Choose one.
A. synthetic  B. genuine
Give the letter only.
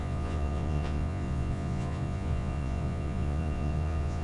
A